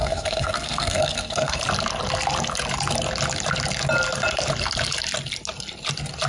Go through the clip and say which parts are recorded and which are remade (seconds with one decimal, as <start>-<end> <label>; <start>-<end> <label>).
0.0-1.6 remade; 1.6-6.3 recorded